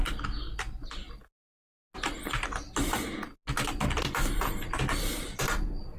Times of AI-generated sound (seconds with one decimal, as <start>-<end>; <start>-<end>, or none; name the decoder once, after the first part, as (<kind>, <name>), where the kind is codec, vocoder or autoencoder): none

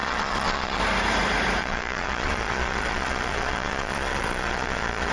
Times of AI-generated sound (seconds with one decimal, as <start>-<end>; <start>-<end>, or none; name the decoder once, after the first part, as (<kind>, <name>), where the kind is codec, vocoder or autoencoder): 0.0-0.8 (vocoder, Vocos); 1.6-5.1